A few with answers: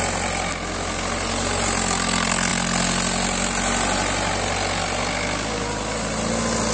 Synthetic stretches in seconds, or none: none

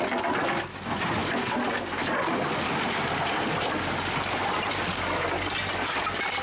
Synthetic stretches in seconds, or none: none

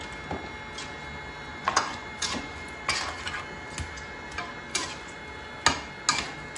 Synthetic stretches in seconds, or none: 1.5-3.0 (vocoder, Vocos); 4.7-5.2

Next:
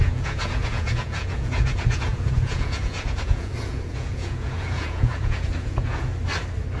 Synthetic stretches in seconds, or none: 0.0-6.1 (vocoder, Vocos)

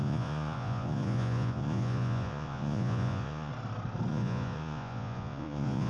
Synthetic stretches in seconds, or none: 0.0-3.5 (vocoder, Vocos); 4.1-5.9

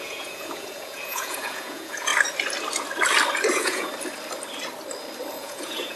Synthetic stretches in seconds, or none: 0.0-2.1 (vocoder, Vocos); 3.5-3.9; 5.4-6.0

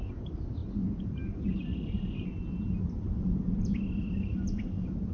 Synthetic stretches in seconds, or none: none